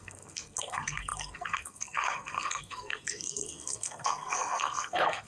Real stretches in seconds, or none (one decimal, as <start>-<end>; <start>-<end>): none

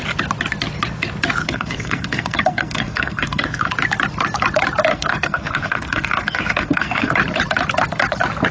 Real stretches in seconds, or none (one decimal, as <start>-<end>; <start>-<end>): 0.0-1.4; 3.7-4.9; 7.1-8.5

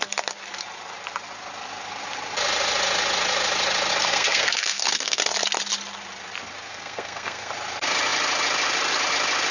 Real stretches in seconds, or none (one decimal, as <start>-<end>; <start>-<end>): 0.0-4.1; 5.2-6.7; 7.5-9.5

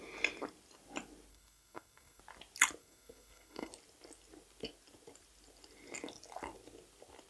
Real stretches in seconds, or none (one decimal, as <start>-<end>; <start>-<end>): 0.0-1.3; 2.2-2.8; 3.7-7.3

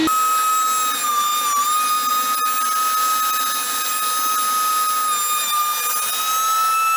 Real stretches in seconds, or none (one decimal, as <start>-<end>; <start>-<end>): 0.0-7.0

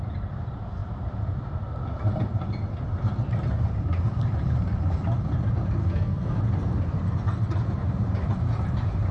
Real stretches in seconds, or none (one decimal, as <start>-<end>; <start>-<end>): 0.0-5.8; 6.4-9.1